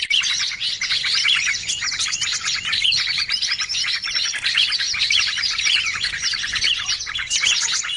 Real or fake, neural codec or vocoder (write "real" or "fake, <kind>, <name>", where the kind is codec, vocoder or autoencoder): fake, vocoder, Vocos